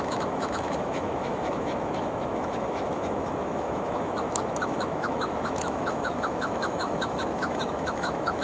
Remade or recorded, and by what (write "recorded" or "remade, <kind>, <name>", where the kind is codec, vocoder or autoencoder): remade, autoencoder, DAC-VAE